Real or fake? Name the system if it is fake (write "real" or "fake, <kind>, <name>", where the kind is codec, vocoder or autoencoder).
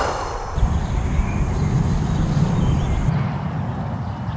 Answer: fake, vocoder, BigVGAN v2